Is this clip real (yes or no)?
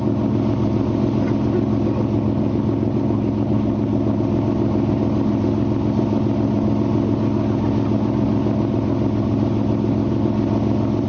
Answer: yes